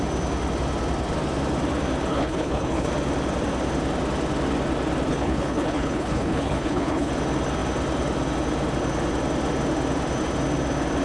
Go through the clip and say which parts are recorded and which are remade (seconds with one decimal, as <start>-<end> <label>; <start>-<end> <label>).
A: 0.0-2.1 recorded; 2.1-2.9 remade; 2.9-5.1 recorded; 5.1-7.1 remade; 7.1-11.0 recorded